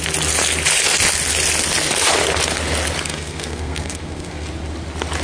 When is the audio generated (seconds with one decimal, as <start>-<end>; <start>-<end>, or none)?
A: 3.1-4.5